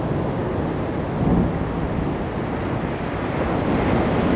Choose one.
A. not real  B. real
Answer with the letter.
B